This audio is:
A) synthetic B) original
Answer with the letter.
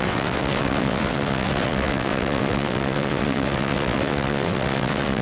A